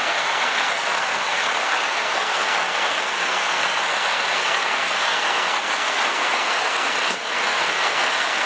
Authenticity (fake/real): fake